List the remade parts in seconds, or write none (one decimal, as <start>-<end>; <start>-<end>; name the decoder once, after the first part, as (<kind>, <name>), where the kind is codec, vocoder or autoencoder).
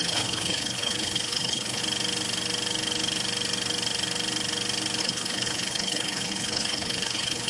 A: 0.0-1.8 (codec, HILCodec); 5.0-7.5